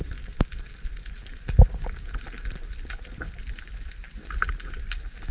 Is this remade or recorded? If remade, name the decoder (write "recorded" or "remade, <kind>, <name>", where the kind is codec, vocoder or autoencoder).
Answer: recorded